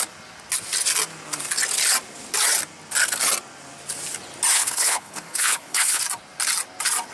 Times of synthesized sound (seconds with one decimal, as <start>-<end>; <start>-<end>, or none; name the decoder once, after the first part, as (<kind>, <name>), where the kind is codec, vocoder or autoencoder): 4.5-6.0 (codec, HILCodec)